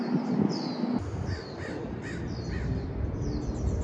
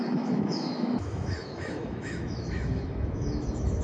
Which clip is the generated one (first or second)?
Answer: second